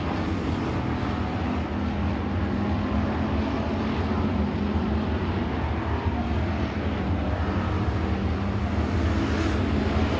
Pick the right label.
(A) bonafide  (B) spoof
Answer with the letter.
A